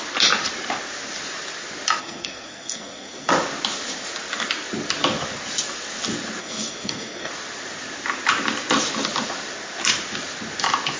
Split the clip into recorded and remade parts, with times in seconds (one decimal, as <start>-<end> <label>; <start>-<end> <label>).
0.0-2.0 recorded; 2.0-3.3 remade; 3.3-6.4 recorded; 6.4-7.3 remade; 7.3-11.0 recorded